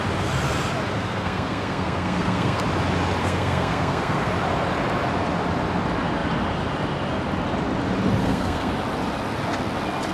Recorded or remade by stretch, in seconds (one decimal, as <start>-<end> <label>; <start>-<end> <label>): 0.0-1.0 recorded; 1.0-2.6 remade; 2.6-3.2 recorded; 3.2-4.3 remade; 4.3-8.2 recorded; 8.2-8.7 remade; 8.7-10.1 recorded